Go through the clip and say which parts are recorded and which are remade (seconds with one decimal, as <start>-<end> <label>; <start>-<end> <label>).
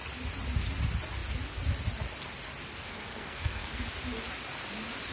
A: 0.0-2.8 recorded; 2.8-3.8 remade; 3.8-5.1 recorded